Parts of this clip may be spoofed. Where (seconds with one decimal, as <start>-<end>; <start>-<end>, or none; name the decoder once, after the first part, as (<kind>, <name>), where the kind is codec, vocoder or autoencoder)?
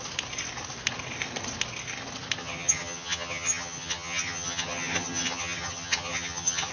2.4-6.7 (vocoder, HiFi-GAN)